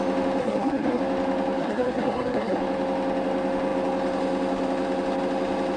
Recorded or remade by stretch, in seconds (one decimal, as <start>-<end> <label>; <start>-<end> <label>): 0.0-0.4 recorded; 0.4-1.0 remade; 1.0-1.6 recorded; 1.6-2.6 remade; 2.6-5.8 recorded